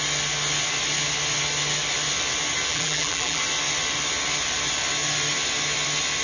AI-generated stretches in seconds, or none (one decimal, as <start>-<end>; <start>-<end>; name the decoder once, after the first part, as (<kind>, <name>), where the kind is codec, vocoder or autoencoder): 2.7-3.4 (vocoder, BigVGAN v2)